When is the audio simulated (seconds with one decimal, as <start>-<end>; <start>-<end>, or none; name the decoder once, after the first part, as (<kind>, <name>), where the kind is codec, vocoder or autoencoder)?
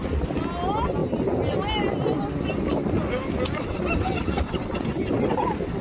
none